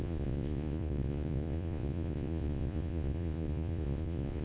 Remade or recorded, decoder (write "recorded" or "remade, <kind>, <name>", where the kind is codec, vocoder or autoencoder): remade, vocoder, Vocos